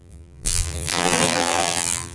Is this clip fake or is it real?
fake